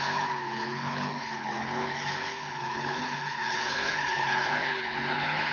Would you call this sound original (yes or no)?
no